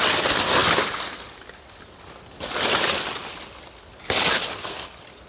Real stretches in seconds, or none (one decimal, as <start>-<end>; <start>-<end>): 0.0-5.3